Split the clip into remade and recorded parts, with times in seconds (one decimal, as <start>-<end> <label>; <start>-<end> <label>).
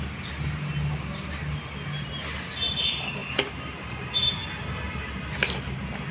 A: 0.0-6.1 recorded